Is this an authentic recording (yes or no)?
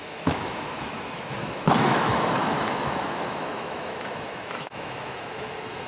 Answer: no